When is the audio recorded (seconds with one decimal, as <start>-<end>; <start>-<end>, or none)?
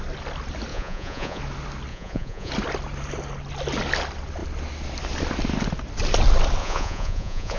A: 0.0-0.7; 1.4-1.9; 2.5-6.6